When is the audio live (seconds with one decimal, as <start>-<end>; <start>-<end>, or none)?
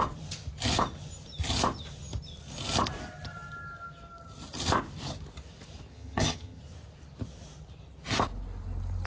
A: 0.0-5.9; 6.6-9.1